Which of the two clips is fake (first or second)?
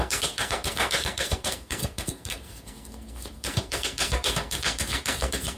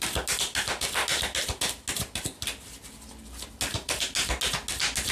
first